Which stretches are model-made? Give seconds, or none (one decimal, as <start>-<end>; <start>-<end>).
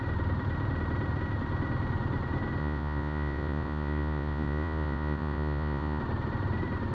2.6-6.0